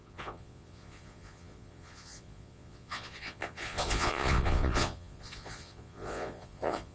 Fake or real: fake